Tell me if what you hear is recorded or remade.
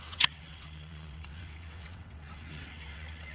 remade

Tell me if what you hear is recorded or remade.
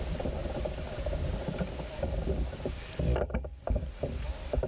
recorded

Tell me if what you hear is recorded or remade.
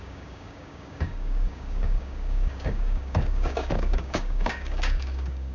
remade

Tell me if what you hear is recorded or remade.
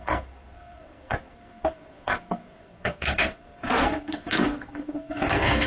remade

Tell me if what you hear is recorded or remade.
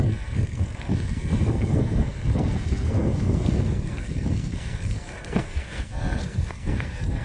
remade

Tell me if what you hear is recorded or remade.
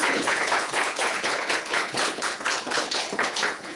remade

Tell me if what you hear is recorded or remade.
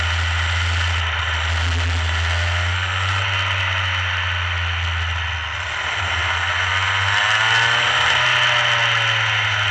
recorded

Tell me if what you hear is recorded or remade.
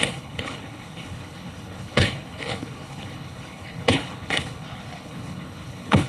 remade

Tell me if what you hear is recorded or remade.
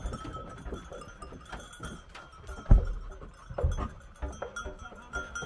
recorded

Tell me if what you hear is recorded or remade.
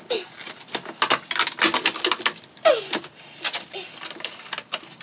recorded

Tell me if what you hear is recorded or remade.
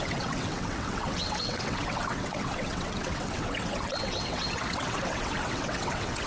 remade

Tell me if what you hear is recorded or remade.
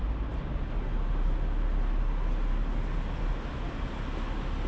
recorded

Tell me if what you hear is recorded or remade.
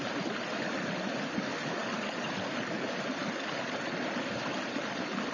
recorded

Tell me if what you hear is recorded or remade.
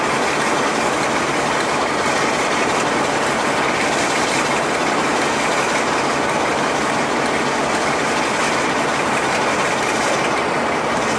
recorded